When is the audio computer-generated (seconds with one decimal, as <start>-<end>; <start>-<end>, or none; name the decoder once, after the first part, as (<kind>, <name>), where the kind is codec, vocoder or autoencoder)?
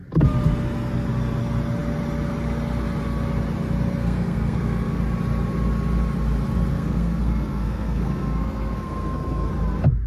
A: 4.0-5.0 (codec, SNAC); 6.7-9.5